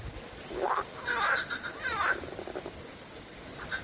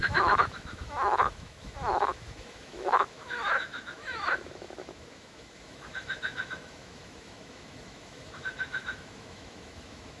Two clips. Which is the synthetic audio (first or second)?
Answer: second